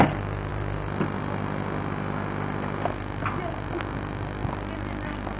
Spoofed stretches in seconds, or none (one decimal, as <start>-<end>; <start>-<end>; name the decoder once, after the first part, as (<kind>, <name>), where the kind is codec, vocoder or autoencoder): none